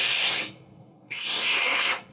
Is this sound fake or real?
fake